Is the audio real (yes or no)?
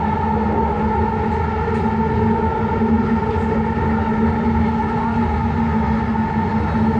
yes